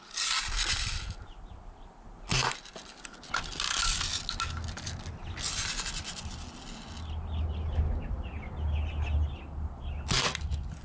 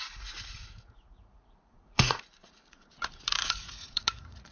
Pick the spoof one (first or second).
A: second